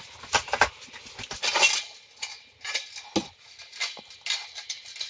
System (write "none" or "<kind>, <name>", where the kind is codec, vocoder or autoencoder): none